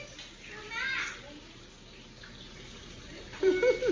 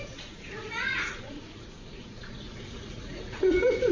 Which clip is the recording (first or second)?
first